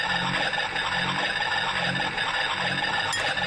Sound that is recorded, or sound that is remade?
recorded